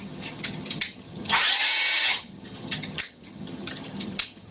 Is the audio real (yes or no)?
no